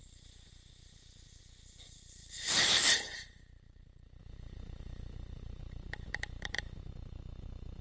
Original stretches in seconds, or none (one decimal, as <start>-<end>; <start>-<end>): 0.0-2.2; 6.9-7.8